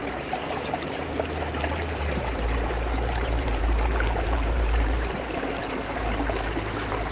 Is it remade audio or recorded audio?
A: remade